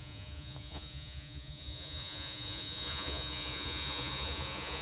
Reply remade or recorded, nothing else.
remade